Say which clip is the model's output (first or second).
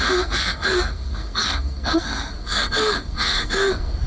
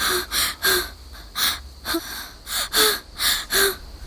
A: first